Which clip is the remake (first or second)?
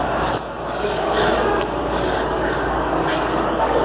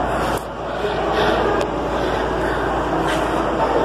first